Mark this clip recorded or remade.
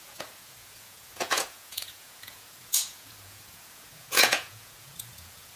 remade